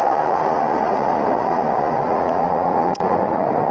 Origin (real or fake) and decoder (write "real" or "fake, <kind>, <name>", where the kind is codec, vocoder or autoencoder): fake, vocoder, Vocos